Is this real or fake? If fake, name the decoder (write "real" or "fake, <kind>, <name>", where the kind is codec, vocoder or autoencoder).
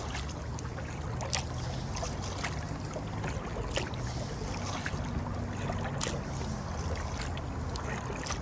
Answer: real